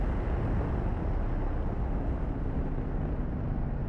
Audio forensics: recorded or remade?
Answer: recorded